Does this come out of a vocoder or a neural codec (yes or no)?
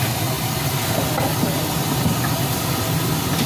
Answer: no